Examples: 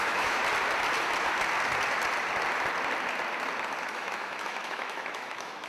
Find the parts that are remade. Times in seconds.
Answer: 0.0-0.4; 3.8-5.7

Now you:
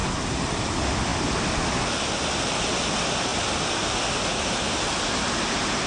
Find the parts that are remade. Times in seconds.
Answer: 0.0-0.6; 4.3-5.0